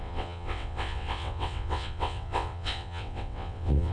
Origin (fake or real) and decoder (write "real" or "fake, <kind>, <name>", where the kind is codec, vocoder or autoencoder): fake, vocoder, WaveNeXt